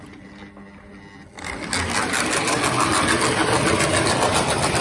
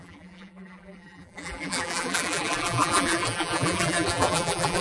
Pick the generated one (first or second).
second